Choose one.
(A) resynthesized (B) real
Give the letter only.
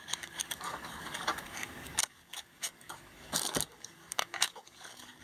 A